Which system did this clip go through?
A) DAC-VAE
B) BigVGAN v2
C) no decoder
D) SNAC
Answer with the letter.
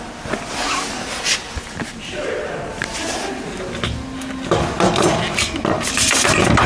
C